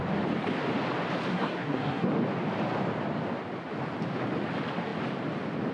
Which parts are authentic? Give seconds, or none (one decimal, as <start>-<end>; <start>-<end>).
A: 0.0-1.3; 2.1-5.7